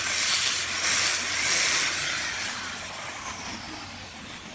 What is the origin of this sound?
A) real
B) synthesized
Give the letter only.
A